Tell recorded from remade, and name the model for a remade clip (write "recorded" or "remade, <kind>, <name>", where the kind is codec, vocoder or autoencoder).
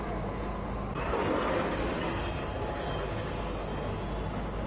recorded